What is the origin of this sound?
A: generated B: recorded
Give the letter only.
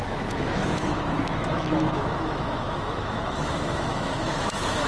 A